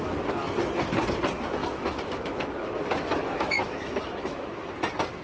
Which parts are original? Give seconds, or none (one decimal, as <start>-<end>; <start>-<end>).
0.0-1.6; 4.7-5.2